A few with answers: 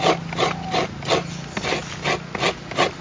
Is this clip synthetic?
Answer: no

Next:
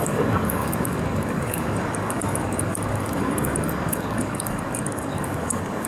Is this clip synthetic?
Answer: yes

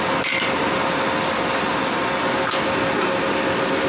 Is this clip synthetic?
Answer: no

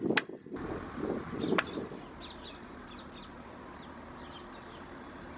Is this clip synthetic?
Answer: no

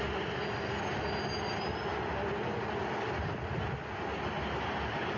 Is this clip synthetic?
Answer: no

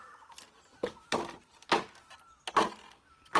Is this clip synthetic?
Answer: no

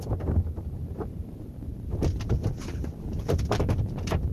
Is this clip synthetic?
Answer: yes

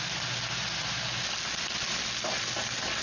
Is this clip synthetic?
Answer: no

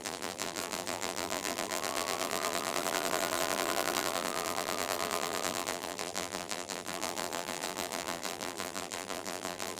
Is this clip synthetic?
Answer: yes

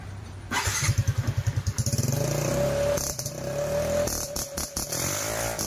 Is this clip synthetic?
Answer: yes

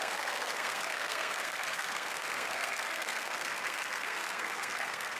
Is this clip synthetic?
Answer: yes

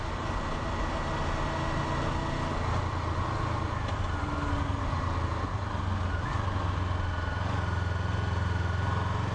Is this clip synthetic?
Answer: no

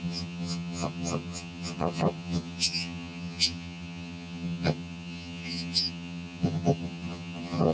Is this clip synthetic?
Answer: yes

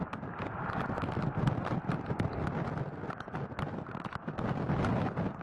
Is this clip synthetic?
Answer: no